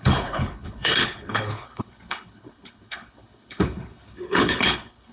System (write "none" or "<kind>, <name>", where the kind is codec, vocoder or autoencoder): codec, HILCodec